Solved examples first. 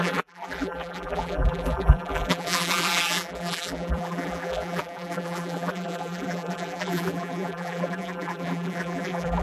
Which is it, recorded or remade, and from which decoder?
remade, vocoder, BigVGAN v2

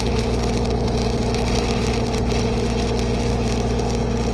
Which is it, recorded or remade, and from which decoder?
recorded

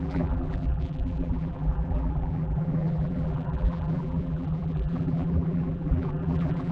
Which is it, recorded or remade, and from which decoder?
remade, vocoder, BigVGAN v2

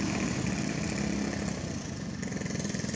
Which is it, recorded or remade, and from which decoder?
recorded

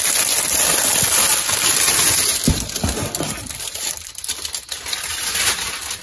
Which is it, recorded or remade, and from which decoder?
recorded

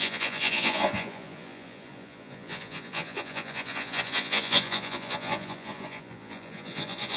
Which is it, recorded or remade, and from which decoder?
remade, vocoder, Vocos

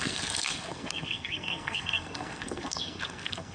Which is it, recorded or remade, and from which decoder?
remade, codec, SNAC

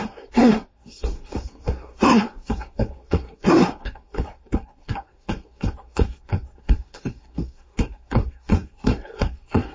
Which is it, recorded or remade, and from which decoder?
remade, codec, SNAC